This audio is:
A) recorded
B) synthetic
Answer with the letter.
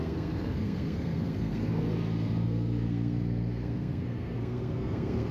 B